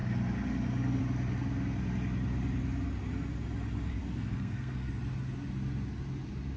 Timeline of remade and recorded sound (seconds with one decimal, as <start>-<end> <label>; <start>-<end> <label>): 0.0-3.9 recorded; 3.9-4.9 remade; 4.9-6.6 recorded